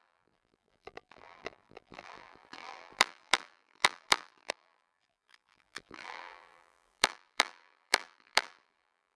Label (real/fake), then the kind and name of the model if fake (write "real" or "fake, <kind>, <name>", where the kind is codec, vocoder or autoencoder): fake, vocoder, BigVGAN v2